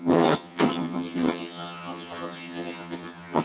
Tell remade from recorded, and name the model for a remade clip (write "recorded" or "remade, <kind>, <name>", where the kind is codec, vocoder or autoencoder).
remade, vocoder, HiFi-GAN